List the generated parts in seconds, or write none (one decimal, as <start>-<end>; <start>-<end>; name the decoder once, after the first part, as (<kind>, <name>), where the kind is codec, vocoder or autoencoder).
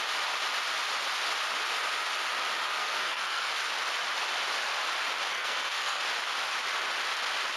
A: 2.8-3.5 (codec, SNAC); 5.3-6.0